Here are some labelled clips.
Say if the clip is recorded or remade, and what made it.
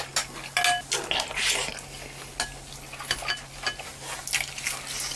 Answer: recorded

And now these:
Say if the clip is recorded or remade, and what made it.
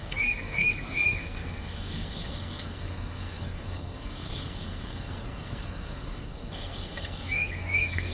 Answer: remade, codec, SNAC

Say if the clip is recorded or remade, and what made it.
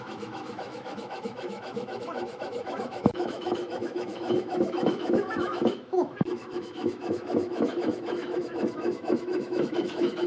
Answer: remade, autoencoder, DAC-VAE